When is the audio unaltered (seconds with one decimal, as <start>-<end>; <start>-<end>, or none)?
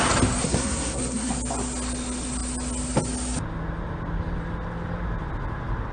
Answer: 0.0-0.4; 1.3-5.9